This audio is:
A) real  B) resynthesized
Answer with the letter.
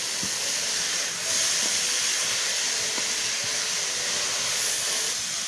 A